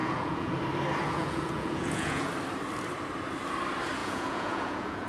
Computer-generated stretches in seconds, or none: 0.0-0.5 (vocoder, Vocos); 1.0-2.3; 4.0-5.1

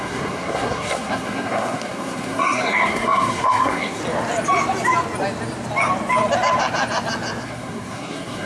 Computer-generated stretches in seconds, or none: 0.0-4.0 (codec, SNAC); 7.4-8.5

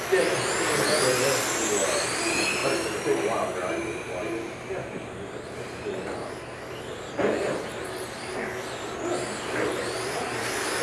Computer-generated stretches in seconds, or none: none